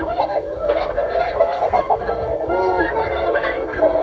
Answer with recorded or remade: remade